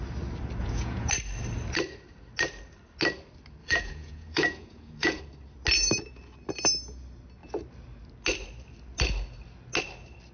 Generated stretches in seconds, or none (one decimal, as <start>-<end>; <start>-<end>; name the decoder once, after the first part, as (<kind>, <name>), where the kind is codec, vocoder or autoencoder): 0.6-1.1 (vocoder, Vocos); 3.6-5.2